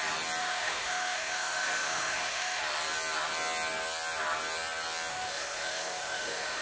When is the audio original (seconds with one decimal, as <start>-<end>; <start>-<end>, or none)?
0.0-0.4; 2.6-5.1